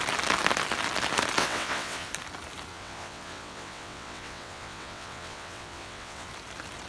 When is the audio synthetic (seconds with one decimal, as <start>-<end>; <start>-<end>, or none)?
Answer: 1.4-2.1; 2.7-6.3